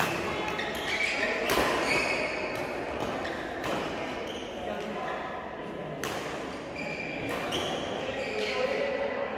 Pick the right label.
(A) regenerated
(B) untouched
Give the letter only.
B